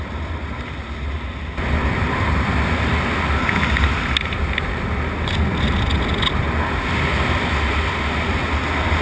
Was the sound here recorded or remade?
recorded